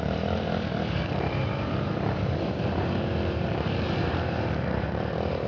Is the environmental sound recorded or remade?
remade